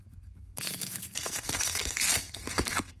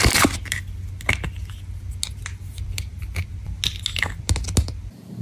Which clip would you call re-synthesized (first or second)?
first